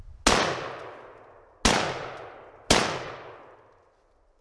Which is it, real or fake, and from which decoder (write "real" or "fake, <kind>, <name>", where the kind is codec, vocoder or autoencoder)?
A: real